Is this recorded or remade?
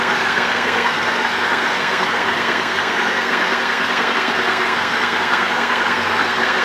remade